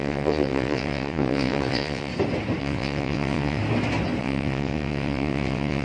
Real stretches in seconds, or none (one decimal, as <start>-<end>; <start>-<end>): 2.1-2.6; 3.6-4.2